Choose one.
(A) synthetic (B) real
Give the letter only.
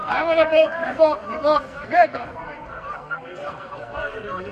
A